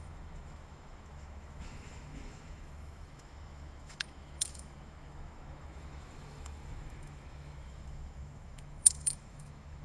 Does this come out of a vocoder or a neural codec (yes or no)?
yes